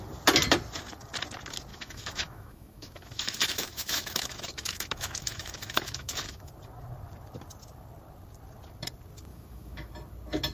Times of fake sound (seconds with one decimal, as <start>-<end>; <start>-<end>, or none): 1.7-6.5; 9.3-9.9